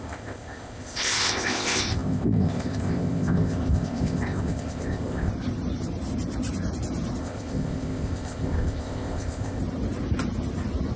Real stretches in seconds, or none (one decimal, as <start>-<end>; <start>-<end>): 5.3-7.2; 9.6-11.0